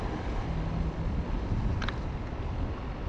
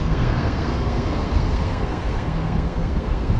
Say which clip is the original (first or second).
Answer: first